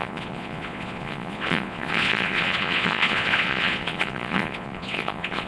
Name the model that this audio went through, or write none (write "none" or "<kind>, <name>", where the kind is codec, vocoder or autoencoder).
vocoder, Vocos